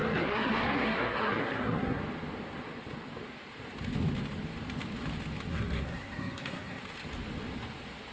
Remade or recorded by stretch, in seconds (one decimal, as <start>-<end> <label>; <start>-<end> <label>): 0.0-2.0 remade; 2.0-5.5 recorded; 5.5-6.8 remade; 6.8-8.1 recorded